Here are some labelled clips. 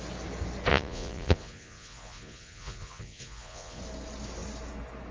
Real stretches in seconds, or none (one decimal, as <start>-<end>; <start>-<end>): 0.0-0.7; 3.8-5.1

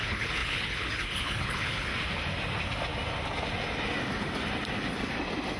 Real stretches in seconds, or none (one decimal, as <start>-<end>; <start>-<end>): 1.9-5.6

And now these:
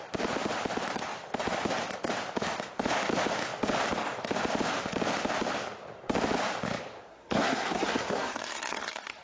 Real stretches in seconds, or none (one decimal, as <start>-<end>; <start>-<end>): 0.0-7.1

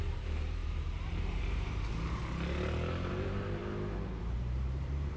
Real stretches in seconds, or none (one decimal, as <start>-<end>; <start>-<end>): 2.2-3.1; 3.6-4.2

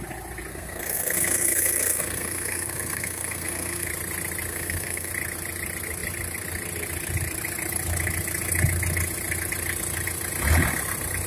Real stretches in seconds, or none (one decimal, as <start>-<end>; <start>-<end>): 0.0-0.5; 3.9-4.5; 5.1-11.3

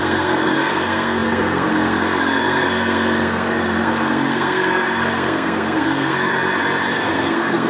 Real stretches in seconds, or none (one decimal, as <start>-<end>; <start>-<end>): 6.3-6.9

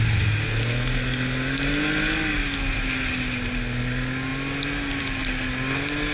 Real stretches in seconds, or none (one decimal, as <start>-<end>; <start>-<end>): 0.0-6.1